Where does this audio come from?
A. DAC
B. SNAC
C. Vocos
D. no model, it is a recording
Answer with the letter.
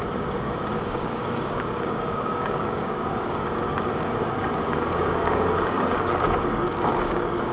A